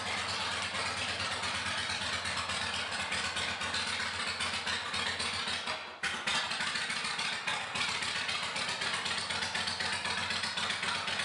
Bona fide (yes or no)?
yes